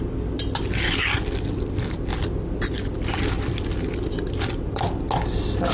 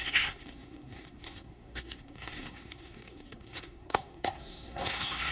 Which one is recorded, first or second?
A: first